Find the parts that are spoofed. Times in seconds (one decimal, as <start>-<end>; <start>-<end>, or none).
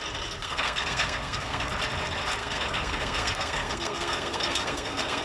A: 0.4-1.7; 2.4-5.2